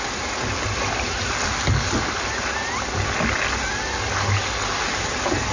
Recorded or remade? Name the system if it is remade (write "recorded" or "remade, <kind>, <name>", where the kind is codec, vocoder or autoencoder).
recorded